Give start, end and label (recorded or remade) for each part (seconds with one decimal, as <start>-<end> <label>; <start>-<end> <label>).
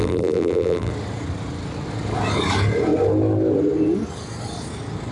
0.0-0.9 remade; 0.9-5.1 recorded